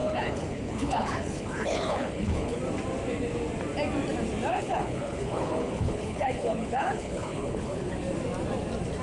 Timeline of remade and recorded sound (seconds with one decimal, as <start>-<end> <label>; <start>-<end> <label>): 0.0-2.6 remade; 2.6-4.5 recorded; 4.5-7.9 remade; 7.9-9.0 recorded